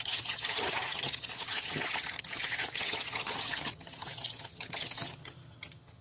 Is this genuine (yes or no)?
no